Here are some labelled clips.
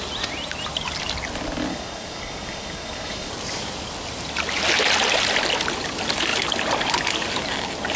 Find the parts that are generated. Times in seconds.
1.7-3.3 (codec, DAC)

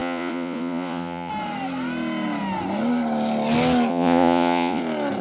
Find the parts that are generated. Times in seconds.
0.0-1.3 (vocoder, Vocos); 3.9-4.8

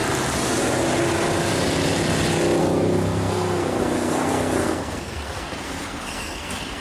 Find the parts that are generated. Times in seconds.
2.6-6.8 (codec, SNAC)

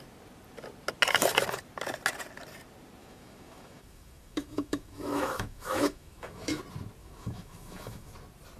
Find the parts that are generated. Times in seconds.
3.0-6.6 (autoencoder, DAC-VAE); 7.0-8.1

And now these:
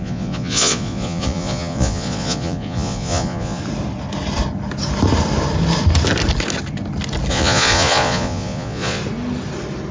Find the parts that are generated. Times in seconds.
0.0-3.6 (vocoder, Vocos); 7.3-9.0

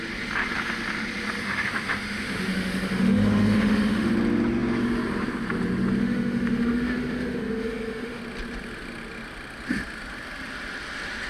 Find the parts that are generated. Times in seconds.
1.4-4.1 (autoencoder, DAC-VAE); 6.0-8.2

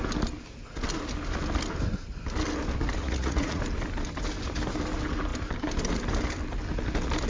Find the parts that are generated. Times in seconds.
3.0-3.6 (vocoder, Vocos)